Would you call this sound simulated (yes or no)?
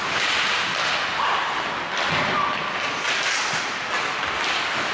no